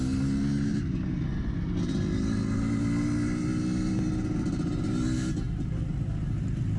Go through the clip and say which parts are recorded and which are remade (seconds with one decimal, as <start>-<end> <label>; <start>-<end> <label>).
0.0-6.8 recorded